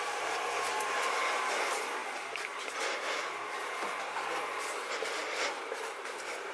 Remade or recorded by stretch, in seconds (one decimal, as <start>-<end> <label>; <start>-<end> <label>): 0.0-6.5 recorded